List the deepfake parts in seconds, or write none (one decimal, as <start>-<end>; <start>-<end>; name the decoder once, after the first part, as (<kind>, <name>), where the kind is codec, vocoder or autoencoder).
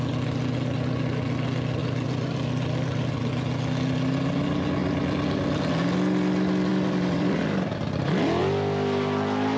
1.8-3.3 (vocoder, BigVGAN v2); 4.8-5.6; 6.7-8.4